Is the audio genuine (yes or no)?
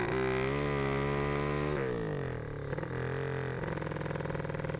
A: yes